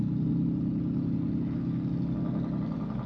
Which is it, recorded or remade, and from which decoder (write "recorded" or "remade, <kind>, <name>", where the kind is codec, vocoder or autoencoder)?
recorded